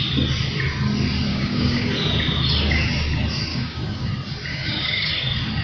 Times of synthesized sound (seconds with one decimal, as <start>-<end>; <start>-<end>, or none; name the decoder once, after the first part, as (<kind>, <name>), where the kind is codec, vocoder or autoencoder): 1.3-1.9 (codec, DAC); 3.5-4.1; 4.5-5.1